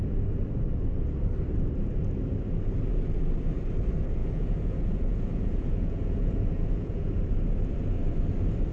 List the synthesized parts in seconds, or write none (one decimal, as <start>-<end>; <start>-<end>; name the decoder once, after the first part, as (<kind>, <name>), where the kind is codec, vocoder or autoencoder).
4.2-7.2 (vocoder, Vocos)